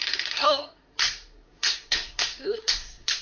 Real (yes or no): no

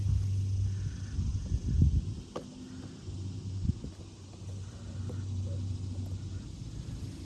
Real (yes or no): yes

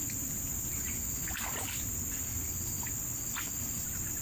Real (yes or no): yes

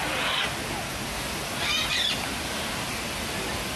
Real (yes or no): yes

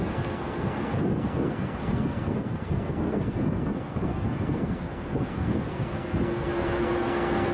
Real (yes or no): no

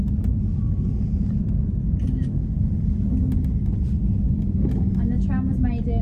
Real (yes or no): yes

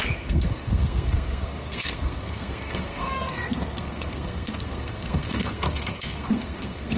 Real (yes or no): no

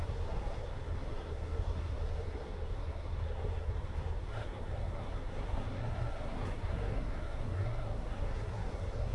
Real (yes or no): no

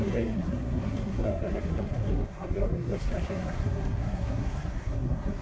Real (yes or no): no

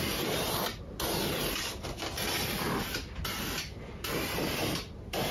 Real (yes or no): yes